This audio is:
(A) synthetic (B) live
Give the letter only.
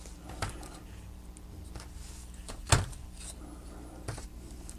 B